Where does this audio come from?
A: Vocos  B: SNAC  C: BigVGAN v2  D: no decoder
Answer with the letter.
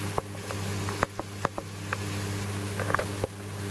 D